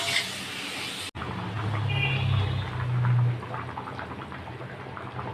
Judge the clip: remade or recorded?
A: recorded